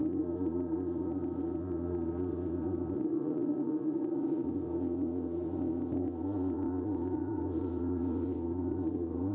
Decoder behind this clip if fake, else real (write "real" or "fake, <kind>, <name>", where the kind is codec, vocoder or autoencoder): fake, vocoder, Vocos